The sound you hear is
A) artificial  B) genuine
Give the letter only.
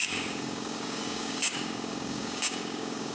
A